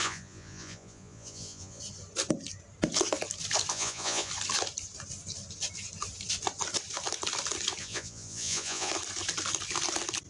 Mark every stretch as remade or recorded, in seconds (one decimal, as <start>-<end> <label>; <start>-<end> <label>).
0.0-1.8 remade; 1.8-3.7 recorded; 3.7-4.3 remade; 4.3-7.8 recorded; 7.8-8.9 remade; 8.9-10.3 recorded